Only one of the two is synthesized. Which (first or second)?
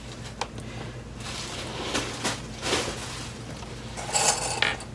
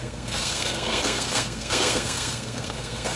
second